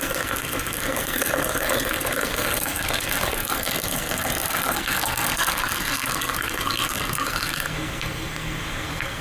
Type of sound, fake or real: fake